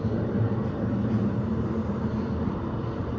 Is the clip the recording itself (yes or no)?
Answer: no